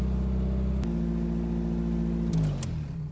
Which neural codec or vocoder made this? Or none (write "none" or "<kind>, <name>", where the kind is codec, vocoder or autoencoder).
none